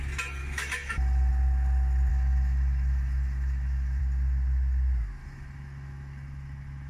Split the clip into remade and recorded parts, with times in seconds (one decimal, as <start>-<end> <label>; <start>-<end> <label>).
0.0-0.4 recorded; 0.4-1.3 remade; 1.3-2.1 recorded; 2.1-4.0 remade; 4.0-5.2 recorded; 5.2-6.9 remade